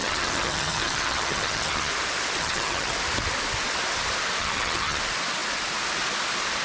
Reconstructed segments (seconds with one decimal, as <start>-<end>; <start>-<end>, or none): 0.0-1.9; 2.4-2.9; 4.4-5.0